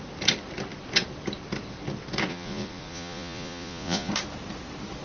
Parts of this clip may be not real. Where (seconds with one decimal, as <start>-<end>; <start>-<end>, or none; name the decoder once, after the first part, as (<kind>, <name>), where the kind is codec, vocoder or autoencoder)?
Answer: 2.3-4.1 (vocoder, Vocos)